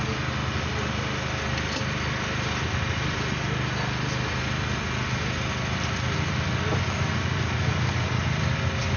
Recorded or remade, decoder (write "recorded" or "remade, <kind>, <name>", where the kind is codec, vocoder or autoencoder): recorded